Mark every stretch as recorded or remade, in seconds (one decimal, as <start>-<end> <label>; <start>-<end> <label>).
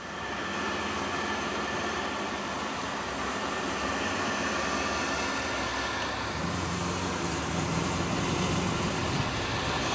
0.0-9.9 recorded